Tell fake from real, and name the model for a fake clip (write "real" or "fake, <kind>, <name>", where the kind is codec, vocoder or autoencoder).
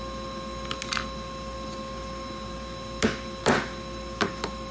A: real